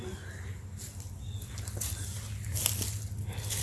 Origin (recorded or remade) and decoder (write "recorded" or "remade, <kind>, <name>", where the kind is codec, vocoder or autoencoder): recorded